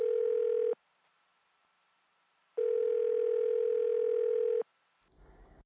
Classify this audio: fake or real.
real